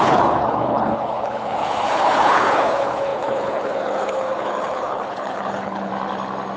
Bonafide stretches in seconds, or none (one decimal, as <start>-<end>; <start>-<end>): 5.9-6.6